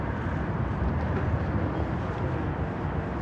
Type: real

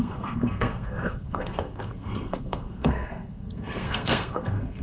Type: fake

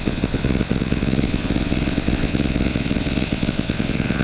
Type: fake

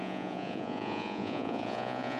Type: fake